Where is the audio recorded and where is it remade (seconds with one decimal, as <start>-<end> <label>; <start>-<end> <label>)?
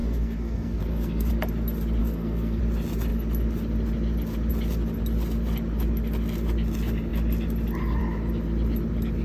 0.0-1.3 remade; 1.3-2.0 recorded; 2.0-2.6 remade; 2.6-9.2 recorded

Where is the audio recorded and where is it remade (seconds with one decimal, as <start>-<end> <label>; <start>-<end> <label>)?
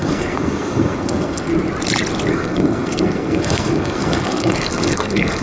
0.0-1.5 remade; 1.5-2.3 recorded; 2.3-5.4 remade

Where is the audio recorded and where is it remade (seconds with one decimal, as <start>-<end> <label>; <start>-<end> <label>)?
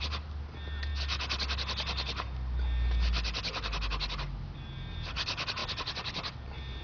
0.0-6.8 recorded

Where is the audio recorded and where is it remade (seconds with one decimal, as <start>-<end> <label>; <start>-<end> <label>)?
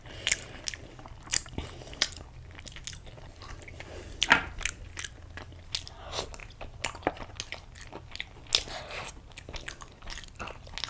0.0-10.9 recorded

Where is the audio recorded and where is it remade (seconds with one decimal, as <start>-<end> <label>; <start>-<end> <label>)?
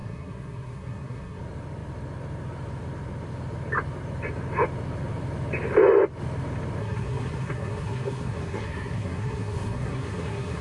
0.0-1.4 remade; 1.4-6.8 recorded; 6.8-10.6 remade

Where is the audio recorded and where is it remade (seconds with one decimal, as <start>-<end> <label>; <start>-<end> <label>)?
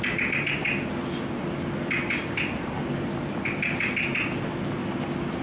0.0-5.4 recorded